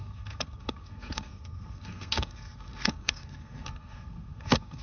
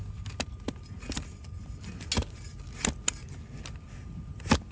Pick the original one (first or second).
second